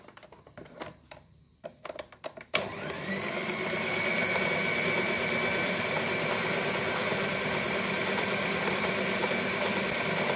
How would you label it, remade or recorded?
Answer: remade